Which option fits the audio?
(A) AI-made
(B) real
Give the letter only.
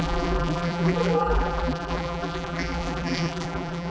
A